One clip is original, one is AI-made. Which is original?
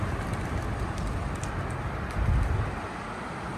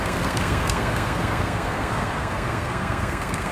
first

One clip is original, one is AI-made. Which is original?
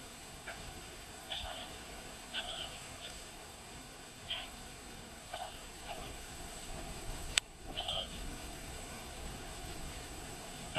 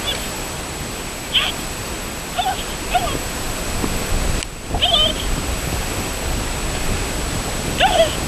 second